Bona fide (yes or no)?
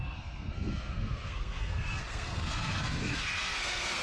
no